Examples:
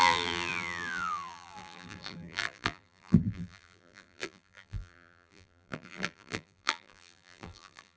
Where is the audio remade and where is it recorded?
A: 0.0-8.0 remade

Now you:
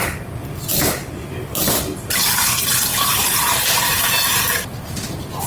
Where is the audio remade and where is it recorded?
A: 0.0-2.1 recorded; 2.1-2.9 remade; 2.9-3.8 recorded; 3.8-5.5 remade

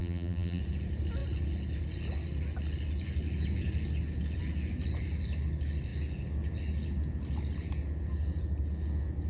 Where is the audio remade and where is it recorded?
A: 0.0-0.6 remade; 0.6-9.3 recorded

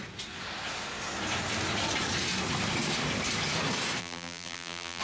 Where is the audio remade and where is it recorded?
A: 0.0-4.0 recorded; 4.0-5.0 remade